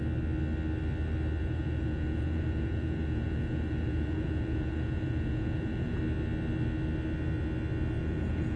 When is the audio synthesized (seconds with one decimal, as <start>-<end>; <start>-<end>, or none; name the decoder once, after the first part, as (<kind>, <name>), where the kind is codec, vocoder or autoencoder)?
1.4-6.0 (vocoder, Vocos); 8.0-8.6